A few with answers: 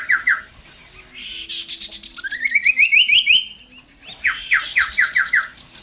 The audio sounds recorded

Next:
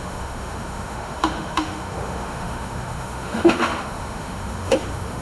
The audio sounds remade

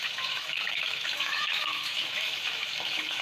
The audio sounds remade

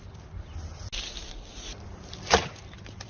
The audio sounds recorded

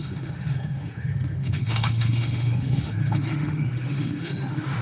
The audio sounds remade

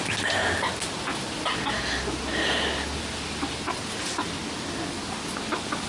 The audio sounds recorded